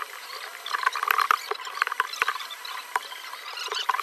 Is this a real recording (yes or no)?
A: yes